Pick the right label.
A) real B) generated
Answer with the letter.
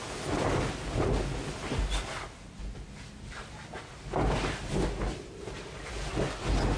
A